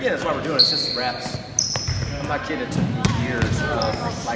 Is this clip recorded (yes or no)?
yes